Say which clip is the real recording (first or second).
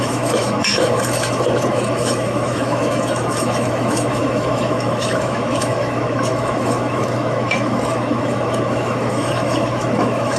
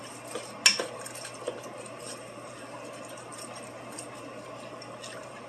second